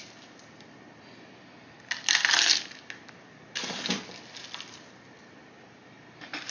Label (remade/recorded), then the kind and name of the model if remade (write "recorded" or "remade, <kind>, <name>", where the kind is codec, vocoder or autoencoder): recorded